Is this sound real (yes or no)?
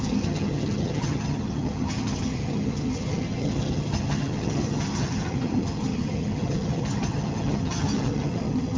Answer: no